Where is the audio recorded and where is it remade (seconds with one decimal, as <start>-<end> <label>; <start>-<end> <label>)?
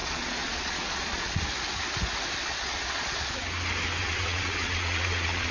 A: 0.0-1.4 remade; 1.4-2.4 recorded; 2.4-3.4 remade; 3.4-4.0 recorded; 4.0-5.5 remade